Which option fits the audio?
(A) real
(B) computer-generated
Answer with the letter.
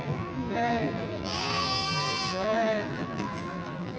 B